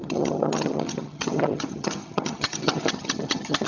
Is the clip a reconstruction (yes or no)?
yes